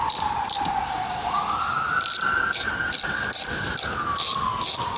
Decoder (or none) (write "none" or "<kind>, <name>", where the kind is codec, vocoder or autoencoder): vocoder, BigVGAN v2